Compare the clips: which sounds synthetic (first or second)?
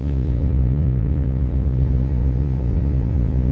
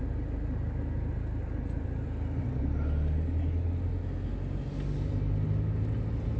first